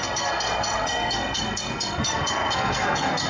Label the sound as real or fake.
fake